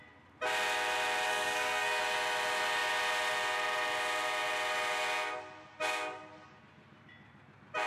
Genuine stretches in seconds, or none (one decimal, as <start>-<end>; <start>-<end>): 0.0-1.3; 2.0-7.9